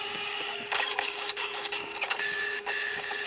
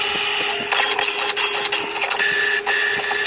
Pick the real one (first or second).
second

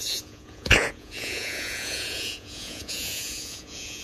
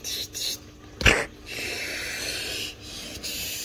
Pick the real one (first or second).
second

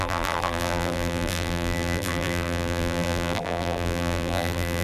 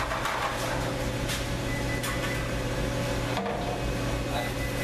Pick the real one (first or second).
second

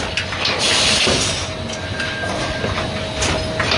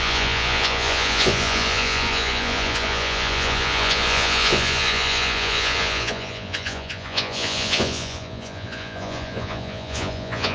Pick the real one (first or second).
first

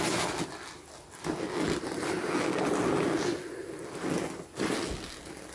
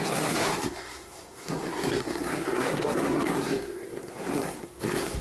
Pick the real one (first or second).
first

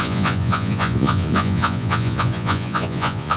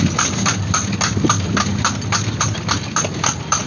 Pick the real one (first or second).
second